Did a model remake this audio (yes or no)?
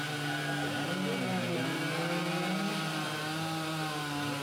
no